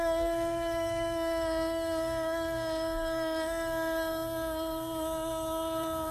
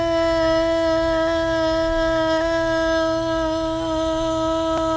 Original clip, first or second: second